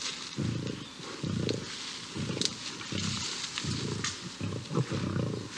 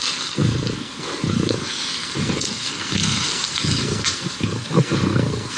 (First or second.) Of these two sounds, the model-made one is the second